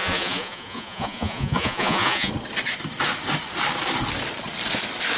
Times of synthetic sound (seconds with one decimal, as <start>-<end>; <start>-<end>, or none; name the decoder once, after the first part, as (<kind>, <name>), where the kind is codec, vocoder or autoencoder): 0.0-2.3 (vocoder, Vocos)